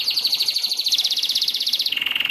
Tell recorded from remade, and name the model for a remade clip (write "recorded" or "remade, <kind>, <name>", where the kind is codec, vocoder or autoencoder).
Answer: remade, vocoder, Vocos